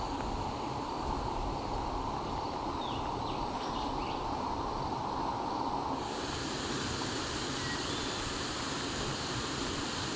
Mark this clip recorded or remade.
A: recorded